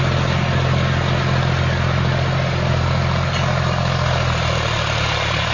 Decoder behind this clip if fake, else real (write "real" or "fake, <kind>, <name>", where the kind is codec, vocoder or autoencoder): real